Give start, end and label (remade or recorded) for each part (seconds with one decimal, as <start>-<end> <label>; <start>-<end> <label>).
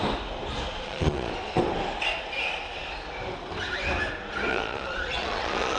0.0-0.7 recorded; 0.7-1.3 remade; 1.3-4.5 recorded; 4.5-5.8 remade